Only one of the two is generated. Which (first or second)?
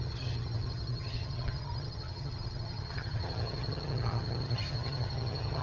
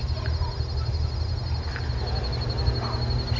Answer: first